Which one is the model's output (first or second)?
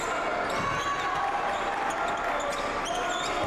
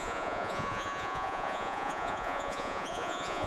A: second